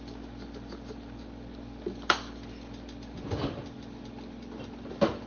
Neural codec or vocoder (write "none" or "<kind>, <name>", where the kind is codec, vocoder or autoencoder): none